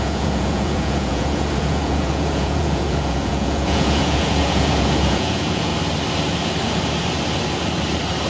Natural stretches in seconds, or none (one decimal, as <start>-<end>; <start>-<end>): 5.7-8.3